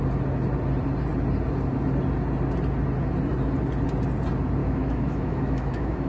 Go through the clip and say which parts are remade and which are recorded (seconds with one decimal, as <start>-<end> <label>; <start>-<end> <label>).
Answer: 0.0-4.6 recorded; 4.6-6.1 remade